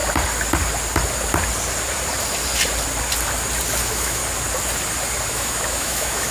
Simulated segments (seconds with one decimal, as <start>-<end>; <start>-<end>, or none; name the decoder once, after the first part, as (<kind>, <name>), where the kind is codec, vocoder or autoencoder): 3.8-4.2 (autoencoder, DAC-VAE); 5.3-6.3